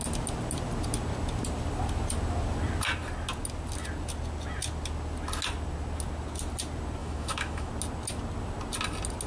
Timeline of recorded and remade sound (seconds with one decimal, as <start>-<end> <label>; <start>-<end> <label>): 0.0-7.0 recorded; 7.0-7.7 remade; 7.7-9.3 recorded